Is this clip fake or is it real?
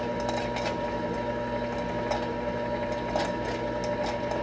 real